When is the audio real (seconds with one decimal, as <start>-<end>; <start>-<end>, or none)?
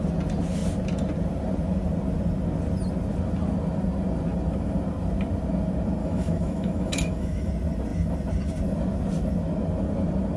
0.0-6.0; 7.5-10.4